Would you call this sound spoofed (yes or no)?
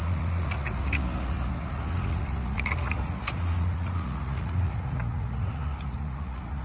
yes